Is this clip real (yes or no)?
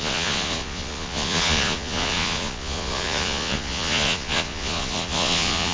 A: no